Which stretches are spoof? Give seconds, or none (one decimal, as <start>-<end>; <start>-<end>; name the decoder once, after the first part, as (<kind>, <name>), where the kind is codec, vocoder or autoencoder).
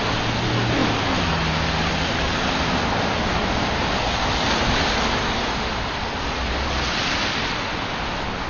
none